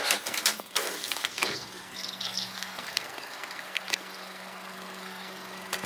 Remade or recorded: remade